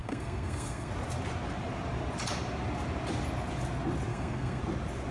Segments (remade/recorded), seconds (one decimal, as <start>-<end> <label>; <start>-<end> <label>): 0.0-0.9 remade; 0.9-4.1 recorded; 4.1-4.6 remade; 4.6-5.1 recorded